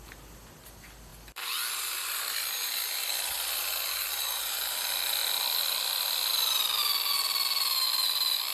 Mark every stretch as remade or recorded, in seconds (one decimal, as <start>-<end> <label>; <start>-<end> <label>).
0.0-8.5 recorded